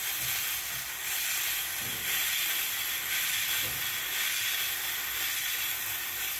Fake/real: real